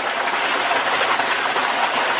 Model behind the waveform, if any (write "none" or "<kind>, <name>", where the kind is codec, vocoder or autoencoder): none